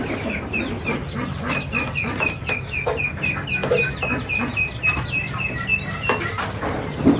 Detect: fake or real real